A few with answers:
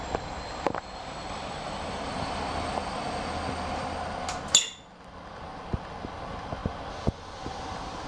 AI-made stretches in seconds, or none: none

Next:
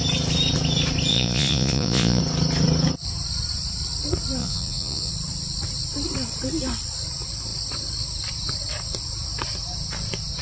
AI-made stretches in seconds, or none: 1.1-2.2 (vocoder, Vocos); 4.4-5.1